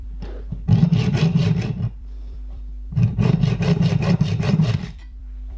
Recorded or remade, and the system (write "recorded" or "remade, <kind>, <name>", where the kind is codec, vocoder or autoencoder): remade, vocoder, BigVGAN v2